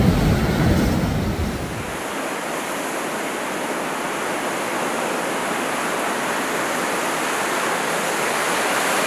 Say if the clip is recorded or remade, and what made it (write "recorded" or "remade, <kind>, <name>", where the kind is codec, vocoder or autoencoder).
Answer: recorded